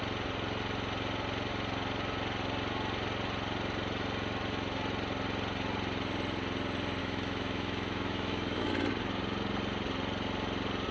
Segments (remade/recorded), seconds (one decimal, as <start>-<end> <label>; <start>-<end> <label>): 0.0-7.0 recorded; 7.0-8.7 remade; 8.7-10.9 recorded